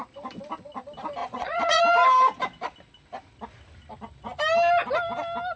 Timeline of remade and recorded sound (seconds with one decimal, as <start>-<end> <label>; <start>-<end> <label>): 0.0-1.2 recorded; 1.2-1.8 remade; 1.8-5.6 recorded